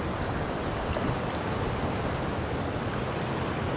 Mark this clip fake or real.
real